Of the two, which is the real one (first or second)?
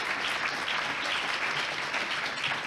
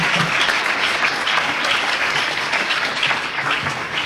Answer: first